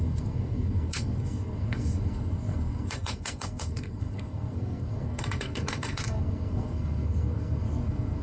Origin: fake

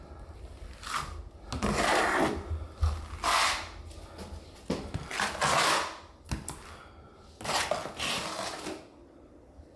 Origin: real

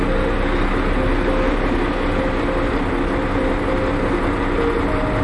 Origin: real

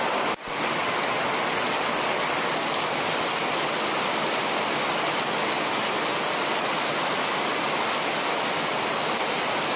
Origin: real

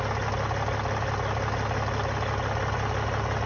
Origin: real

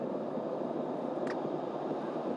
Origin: real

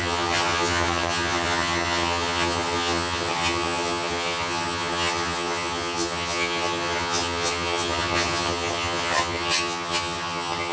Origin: fake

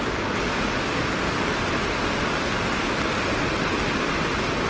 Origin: real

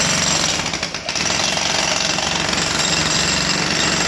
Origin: real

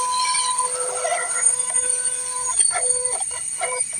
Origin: fake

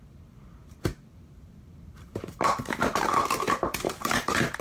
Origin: fake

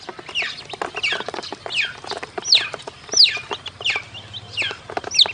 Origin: real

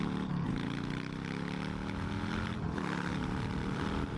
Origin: real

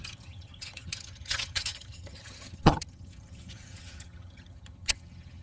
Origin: fake